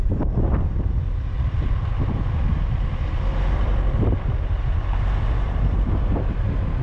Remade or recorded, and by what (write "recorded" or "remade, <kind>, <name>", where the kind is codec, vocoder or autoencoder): remade, vocoder, BigVGAN v2